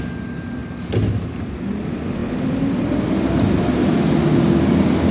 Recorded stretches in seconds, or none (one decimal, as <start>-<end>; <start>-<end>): 0.0-5.1